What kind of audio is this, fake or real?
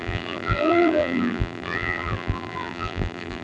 fake